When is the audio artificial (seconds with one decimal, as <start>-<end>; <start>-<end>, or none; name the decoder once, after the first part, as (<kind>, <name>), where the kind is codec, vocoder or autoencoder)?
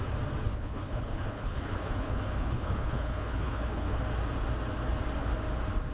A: 0.5-4.0 (codec, HILCodec)